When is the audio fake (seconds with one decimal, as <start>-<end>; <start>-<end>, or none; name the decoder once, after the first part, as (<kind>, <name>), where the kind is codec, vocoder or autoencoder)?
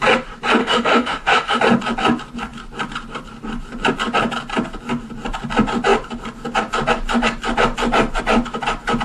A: 0.6-1.6 (autoencoder, DAC-VAE)